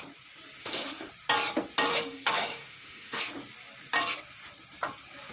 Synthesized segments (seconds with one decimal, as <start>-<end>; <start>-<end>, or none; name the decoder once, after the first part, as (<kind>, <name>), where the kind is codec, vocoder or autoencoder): 0.6-1.1 (autoencoder, DAC-VAE); 1.9-3.2